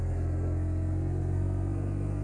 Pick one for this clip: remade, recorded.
remade